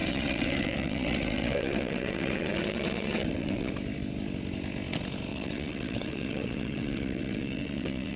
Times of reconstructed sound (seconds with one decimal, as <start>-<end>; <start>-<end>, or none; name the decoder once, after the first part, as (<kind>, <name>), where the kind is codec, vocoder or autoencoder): 0.0-3.7 (vocoder, WaveNeXt); 5.3-8.2